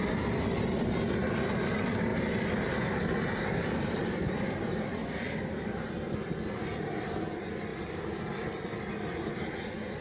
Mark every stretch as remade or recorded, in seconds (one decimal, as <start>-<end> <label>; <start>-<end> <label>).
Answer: 0.0-2.1 recorded; 2.1-3.0 remade; 3.0-3.4 recorded; 3.4-4.1 remade; 4.1-10.0 recorded